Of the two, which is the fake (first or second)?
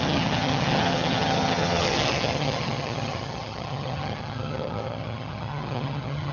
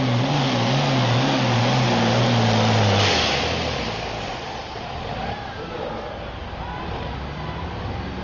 first